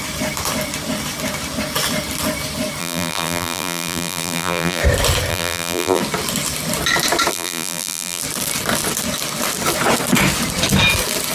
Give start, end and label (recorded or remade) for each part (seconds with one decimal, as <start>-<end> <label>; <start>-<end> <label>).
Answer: 0.0-2.8 recorded; 2.8-4.8 remade; 4.8-5.3 recorded; 5.3-6.0 remade; 6.0-7.3 recorded; 7.3-8.2 remade; 8.2-11.3 recorded